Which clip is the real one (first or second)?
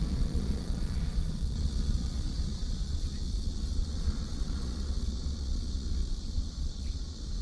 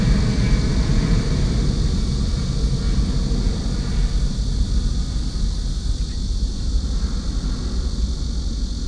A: second